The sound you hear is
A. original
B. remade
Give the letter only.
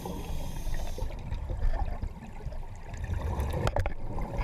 A